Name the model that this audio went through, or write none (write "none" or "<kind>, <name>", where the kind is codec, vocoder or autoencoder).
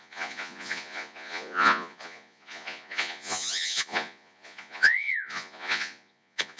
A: vocoder, Vocos